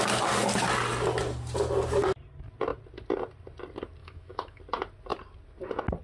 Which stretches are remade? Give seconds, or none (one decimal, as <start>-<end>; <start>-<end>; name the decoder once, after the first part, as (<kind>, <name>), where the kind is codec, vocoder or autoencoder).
4.0-4.6 (autoencoder, DAC-VAE)